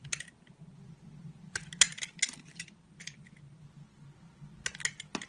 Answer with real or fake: real